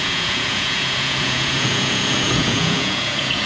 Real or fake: fake